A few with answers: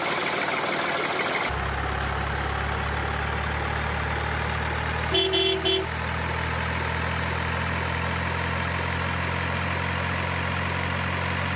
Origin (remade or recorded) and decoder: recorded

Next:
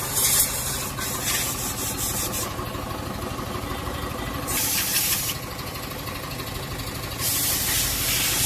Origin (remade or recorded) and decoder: recorded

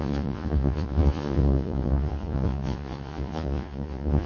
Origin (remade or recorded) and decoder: remade, vocoder, Vocos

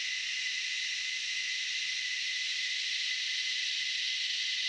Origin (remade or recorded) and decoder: recorded